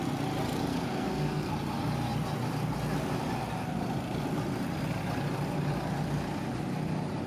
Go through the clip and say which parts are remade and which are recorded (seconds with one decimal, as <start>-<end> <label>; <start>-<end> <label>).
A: 0.0-0.7 recorded; 0.7-1.5 remade; 1.5-7.3 recorded